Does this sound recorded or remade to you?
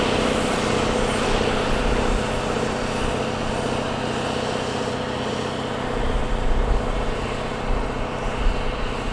recorded